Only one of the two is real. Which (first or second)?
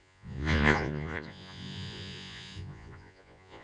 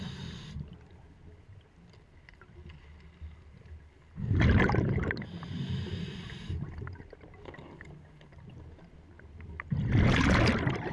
second